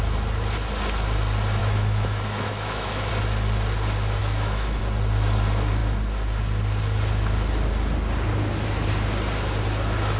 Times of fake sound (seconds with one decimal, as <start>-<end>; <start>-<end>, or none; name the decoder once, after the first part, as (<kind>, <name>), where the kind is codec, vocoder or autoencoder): 1.6-3.1 (autoencoder, DAC-VAE); 4.2-4.8